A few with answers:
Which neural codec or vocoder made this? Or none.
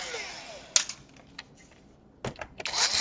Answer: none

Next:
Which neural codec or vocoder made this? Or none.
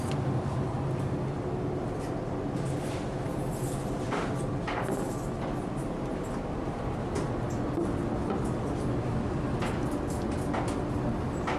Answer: none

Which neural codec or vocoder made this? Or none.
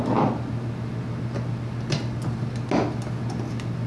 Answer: none